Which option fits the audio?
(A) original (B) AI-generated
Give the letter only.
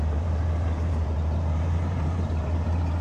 B